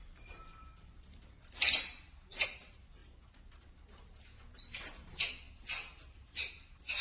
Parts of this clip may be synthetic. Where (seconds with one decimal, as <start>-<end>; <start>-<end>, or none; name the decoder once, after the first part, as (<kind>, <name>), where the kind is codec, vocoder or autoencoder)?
0.0-3.0 (vocoder, BigVGAN v2); 6.5-7.0